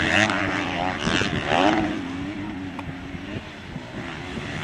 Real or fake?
fake